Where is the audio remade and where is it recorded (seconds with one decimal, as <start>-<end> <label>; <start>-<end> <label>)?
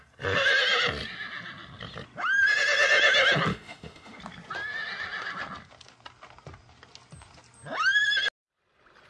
0.0-3.5 recorded; 3.5-4.2 remade; 4.2-9.1 recorded